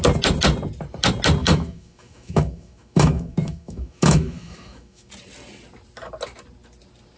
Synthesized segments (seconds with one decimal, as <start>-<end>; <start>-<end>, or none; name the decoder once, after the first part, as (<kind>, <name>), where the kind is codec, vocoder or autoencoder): 1.4-5.1 (autoencoder, DAC-VAE)